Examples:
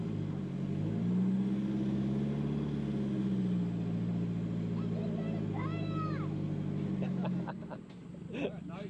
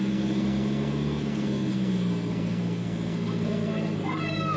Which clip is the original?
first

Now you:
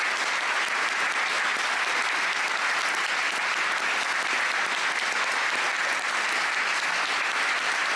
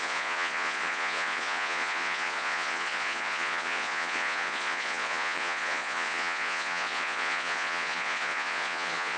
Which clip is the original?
first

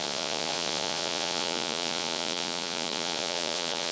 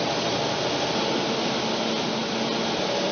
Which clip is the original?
second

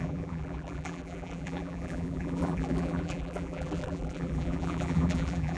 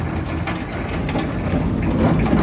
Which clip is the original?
second